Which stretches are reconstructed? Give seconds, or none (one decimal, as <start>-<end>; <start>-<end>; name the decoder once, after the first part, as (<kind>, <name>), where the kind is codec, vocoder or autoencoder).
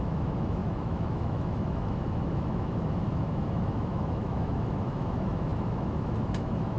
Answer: 0.0-6.8 (autoencoder, DAC-VAE)